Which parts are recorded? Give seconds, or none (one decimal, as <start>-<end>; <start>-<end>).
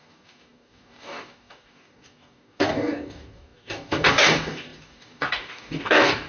none